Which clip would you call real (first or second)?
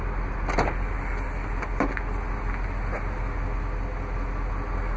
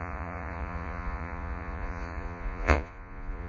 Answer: first